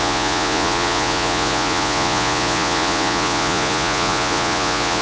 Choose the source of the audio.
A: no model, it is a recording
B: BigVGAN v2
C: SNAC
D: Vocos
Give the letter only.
D